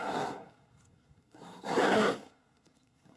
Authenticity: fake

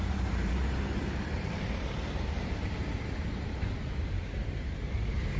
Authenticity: fake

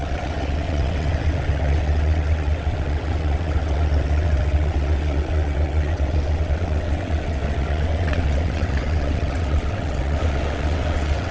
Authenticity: fake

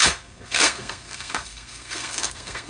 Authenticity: fake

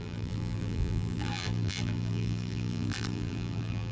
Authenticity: fake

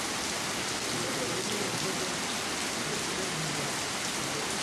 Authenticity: real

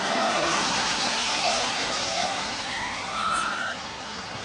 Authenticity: fake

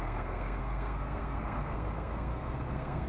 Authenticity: fake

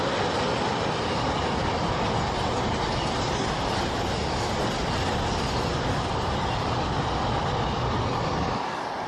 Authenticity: real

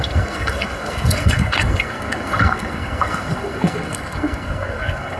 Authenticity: fake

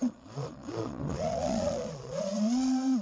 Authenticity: fake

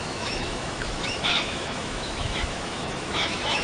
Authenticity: fake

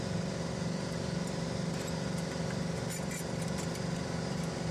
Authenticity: real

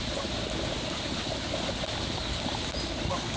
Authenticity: real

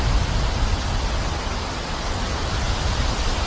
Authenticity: real